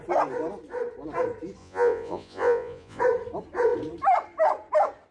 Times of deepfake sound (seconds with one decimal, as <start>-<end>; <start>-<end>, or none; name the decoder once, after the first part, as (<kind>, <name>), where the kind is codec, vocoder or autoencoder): 1.6-3.0 (vocoder, Vocos)